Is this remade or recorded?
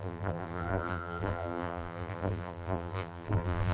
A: remade